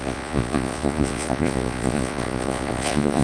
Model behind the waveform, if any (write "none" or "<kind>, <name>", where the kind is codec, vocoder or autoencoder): vocoder, Vocos